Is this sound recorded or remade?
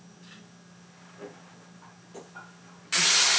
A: recorded